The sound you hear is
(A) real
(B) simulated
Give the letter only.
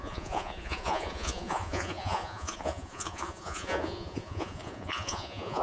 B